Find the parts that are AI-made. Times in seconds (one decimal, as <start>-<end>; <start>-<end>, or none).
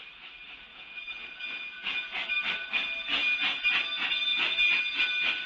0.7-2.1; 3.1-3.8; 4.3-4.8